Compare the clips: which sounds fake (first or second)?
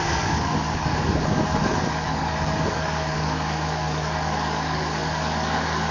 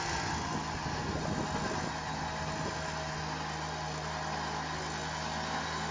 first